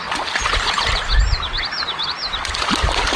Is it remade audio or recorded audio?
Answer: recorded